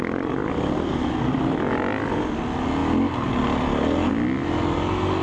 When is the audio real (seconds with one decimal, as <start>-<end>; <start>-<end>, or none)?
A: 0.0-5.2